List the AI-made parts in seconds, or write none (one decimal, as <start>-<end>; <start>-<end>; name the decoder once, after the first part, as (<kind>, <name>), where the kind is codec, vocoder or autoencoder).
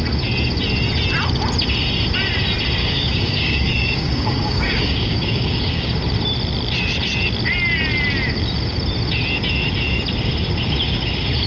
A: 2.8-5.8 (codec, DAC)